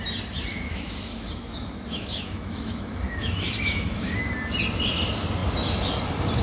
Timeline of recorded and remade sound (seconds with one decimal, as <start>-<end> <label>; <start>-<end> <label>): 0.0-0.5 recorded; 0.5-4.3 remade; 4.3-6.4 recorded